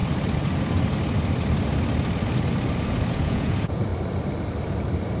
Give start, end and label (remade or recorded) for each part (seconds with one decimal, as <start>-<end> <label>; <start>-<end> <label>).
0.0-3.1 recorded; 3.1-3.9 remade; 3.9-5.2 recorded